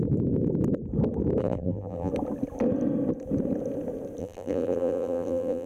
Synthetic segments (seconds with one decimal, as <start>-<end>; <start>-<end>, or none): 1.4-2.1; 4.2-5.7